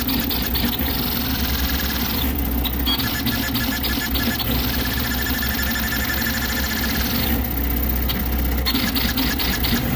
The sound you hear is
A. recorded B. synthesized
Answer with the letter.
A